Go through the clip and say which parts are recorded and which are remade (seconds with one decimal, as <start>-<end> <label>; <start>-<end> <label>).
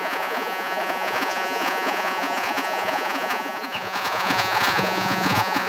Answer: 0.0-5.7 remade